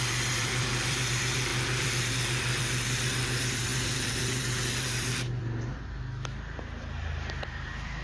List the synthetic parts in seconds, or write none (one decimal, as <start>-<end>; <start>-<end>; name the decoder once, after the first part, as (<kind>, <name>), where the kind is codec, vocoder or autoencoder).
0.0-8.0 (vocoder, BigVGAN v2)